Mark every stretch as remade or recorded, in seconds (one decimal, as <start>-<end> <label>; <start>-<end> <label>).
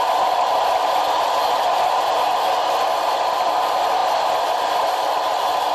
0.0-5.7 recorded